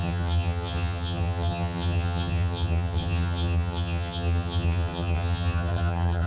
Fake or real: fake